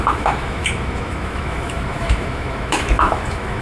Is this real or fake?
fake